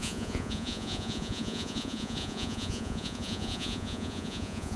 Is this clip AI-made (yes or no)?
yes